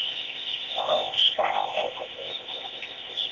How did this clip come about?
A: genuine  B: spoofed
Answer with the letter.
B